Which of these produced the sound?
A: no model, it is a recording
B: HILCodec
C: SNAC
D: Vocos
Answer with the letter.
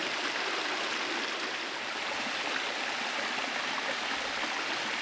A